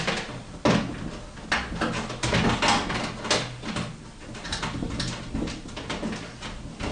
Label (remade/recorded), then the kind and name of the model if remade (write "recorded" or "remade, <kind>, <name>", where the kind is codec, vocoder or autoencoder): recorded